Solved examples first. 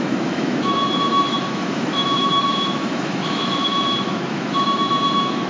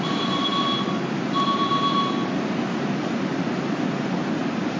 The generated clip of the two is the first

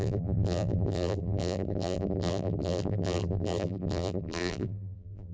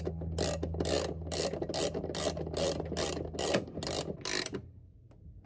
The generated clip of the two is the first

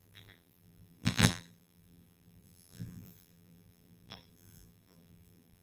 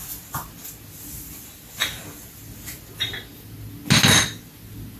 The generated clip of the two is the first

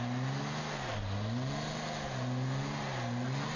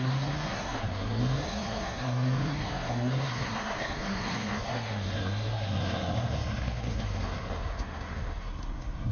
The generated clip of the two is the second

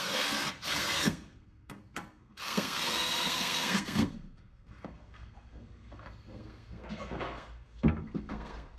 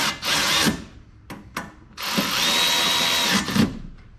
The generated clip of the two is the first